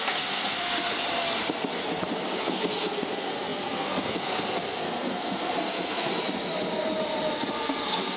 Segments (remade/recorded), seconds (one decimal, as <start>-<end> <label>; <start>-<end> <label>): 0.0-0.9 remade; 0.9-2.4 recorded; 2.4-6.1 remade; 6.1-7.5 recorded; 7.5-8.2 remade

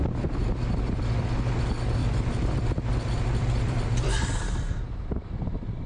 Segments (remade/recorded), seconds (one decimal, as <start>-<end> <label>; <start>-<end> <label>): 0.0-2.0 recorded; 2.0-4.8 remade; 4.8-5.9 recorded

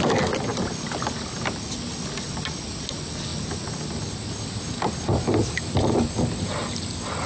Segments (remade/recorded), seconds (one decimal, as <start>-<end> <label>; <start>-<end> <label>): 0.0-7.3 recorded

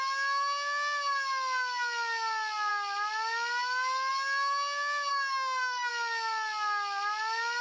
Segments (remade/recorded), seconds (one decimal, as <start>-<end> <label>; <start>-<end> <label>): 0.0-5.1 recorded; 5.1-5.9 remade; 5.9-7.6 recorded

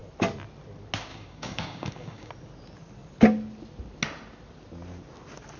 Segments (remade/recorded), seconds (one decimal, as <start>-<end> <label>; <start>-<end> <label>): 0.0-1.1 recorded; 1.1-2.3 remade; 2.3-5.6 recorded

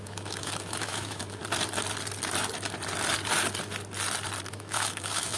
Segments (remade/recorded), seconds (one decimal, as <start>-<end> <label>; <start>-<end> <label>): 0.0-1.4 remade; 1.4-4.5 recorded; 4.5-5.4 remade

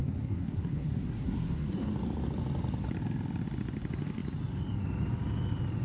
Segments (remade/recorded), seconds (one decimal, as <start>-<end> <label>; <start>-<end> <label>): 0.0-1.9 remade; 1.9-5.8 recorded

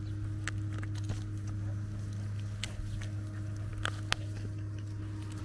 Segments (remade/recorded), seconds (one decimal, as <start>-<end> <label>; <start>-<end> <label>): 0.0-5.4 recorded